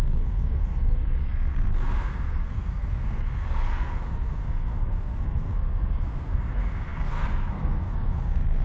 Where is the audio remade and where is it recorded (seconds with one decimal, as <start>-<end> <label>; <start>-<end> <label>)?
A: 0.0-8.6 remade